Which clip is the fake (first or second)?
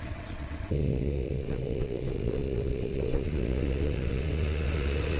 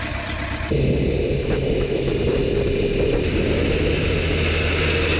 first